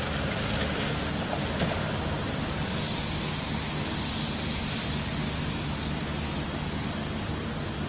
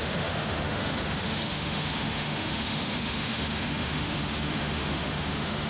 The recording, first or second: first